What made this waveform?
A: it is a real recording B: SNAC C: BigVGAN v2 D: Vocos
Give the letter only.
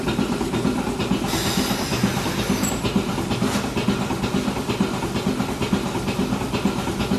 A